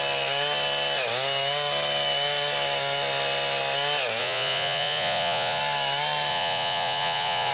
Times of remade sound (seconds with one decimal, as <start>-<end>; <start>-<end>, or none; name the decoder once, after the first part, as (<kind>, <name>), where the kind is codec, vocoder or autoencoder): 4.2-5.6 (vocoder, Vocos); 6.3-7.5